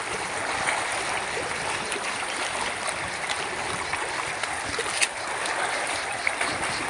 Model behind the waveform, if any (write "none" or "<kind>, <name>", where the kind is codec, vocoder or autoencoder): none